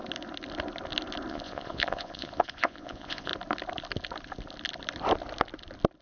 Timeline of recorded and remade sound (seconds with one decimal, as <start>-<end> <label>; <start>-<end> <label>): 0.0-1.3 recorded; 1.3-3.3 remade; 3.3-6.0 recorded